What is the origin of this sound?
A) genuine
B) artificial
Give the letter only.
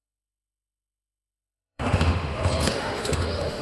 B